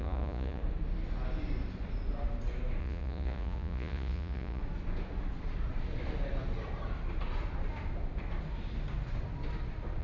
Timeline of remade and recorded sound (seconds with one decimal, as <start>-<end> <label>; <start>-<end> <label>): 0.0-0.6 remade; 0.6-2.8 recorded; 2.8-4.6 remade; 4.6-10.0 recorded